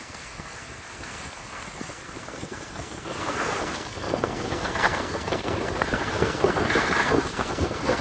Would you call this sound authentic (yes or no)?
no